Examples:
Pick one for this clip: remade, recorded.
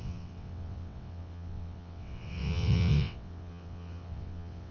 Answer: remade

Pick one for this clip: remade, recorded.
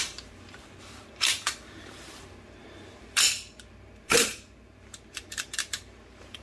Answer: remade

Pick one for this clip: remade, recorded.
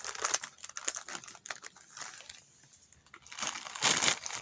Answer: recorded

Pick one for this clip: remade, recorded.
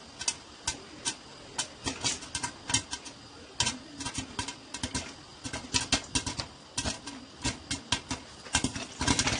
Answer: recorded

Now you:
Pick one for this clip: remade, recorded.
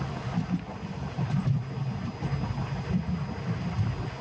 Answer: recorded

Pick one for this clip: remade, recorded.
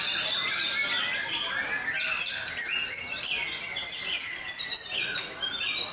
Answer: recorded